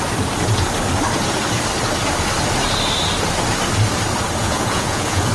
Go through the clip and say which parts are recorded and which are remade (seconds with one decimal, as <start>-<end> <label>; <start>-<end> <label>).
0.0-4.4 recorded; 4.4-5.3 remade